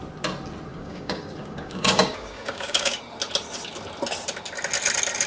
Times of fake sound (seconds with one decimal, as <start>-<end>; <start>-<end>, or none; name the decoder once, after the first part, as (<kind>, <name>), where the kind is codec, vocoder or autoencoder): 0.7-3.0 (codec, DAC)